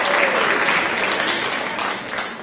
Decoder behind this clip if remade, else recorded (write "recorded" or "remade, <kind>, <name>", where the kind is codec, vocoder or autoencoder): recorded